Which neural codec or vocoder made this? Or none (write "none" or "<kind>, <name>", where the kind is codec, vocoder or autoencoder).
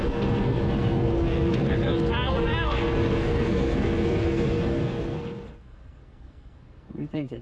codec, SNAC